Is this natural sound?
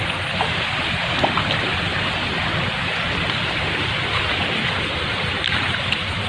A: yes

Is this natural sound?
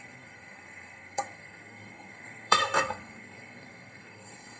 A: no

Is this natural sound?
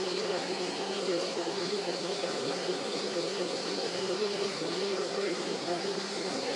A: no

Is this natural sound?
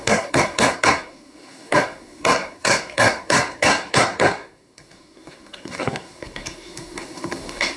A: no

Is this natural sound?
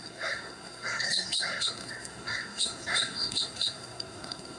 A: no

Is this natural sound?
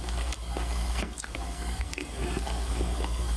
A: no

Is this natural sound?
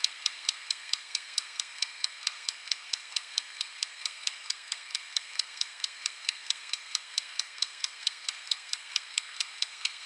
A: no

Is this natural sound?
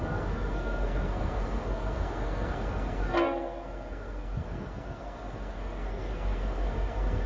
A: no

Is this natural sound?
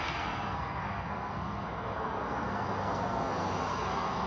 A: no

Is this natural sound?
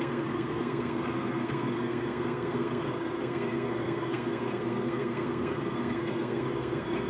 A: no